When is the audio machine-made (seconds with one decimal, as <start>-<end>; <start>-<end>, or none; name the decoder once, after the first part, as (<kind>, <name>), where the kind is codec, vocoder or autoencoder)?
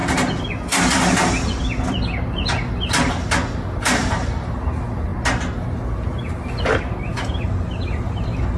none